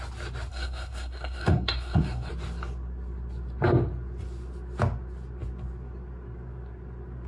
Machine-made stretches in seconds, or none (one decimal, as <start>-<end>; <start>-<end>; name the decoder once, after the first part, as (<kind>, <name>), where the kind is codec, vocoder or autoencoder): 0.5-2.3 (codec, SNAC)